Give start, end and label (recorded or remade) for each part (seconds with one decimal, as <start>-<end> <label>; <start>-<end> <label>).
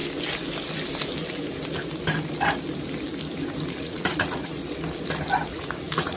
0.0-3.7 recorded; 3.7-4.6 remade; 4.6-5.5 recorded; 5.5-6.2 remade